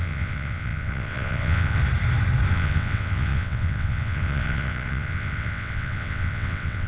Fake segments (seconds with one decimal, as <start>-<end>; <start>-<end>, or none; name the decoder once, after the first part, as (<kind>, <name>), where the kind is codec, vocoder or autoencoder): 0.0-1.8 (vocoder, WaveNeXt); 2.5-6.9